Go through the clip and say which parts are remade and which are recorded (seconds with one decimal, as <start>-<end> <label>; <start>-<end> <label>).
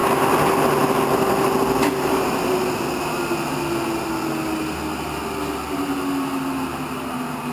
0.0-7.5 recorded